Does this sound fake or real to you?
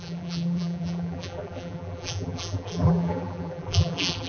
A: fake